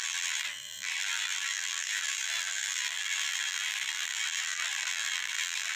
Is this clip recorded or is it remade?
remade